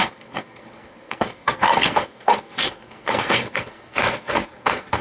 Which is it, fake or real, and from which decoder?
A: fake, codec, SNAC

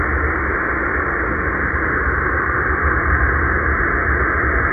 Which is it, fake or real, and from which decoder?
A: real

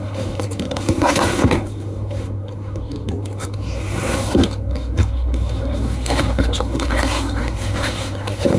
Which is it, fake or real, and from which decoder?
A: fake, codec, SNAC